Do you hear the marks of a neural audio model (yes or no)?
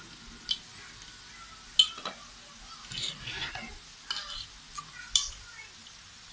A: no